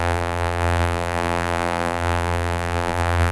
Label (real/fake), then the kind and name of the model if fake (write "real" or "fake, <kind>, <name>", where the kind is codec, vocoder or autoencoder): fake, vocoder, BigVGAN v2